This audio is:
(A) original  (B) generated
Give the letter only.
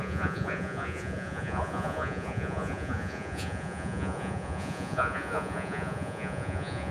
B